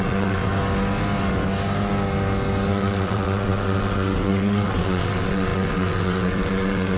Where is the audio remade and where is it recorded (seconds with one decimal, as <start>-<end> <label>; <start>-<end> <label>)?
0.0-0.5 remade; 0.5-2.7 recorded; 2.7-7.0 remade